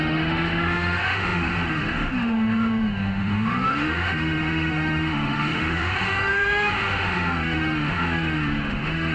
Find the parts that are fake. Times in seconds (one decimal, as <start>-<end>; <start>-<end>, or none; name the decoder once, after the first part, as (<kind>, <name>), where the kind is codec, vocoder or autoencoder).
0.0-9.1 (autoencoder, DAC-VAE)